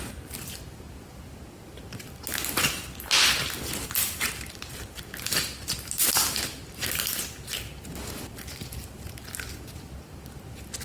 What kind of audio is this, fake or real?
real